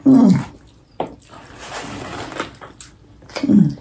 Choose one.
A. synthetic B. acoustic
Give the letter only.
B